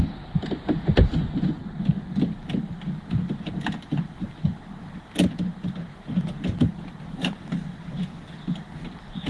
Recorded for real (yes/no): yes